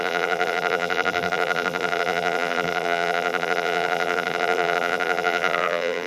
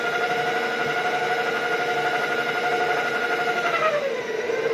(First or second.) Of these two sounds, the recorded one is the second